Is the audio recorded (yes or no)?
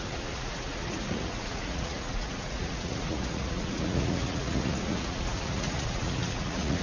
no